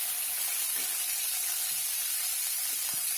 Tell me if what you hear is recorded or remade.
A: recorded